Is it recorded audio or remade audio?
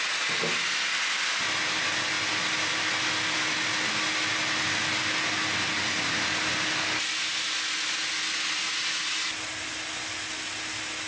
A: recorded